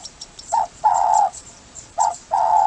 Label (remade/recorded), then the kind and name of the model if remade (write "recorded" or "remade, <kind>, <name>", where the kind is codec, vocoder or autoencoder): remade, vocoder, Vocos